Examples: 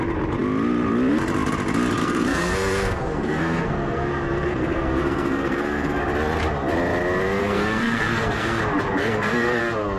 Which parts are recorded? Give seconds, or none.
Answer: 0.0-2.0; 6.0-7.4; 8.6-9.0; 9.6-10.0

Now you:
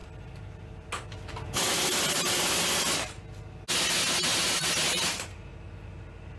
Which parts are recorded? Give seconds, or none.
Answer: 0.0-6.4

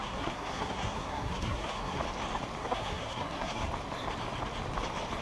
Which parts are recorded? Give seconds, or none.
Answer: 2.0-2.6; 3.7-5.2

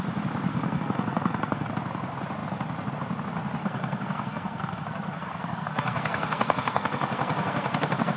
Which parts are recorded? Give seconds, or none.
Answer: 0.0-0.5; 1.7-3.6

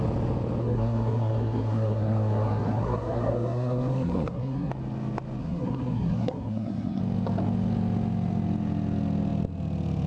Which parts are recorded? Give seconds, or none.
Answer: 0.0-0.6; 4.7-5.4; 7.0-10.1